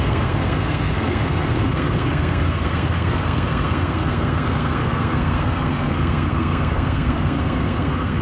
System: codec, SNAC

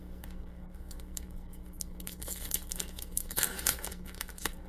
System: codec, SNAC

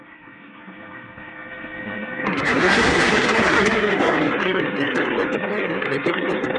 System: codec, SNAC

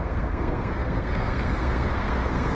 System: codec, SNAC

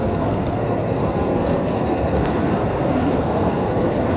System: codec, SNAC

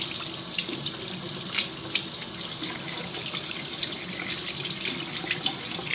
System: none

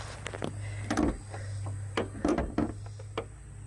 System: none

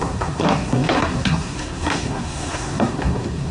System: codec, SNAC